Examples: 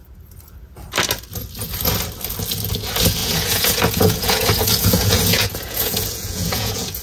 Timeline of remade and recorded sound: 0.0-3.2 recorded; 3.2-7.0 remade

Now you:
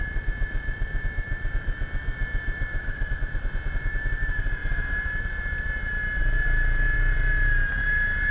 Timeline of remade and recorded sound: 0.0-8.3 recorded

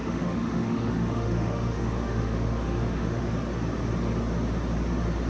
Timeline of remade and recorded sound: 0.0-3.2 remade; 3.2-5.3 recorded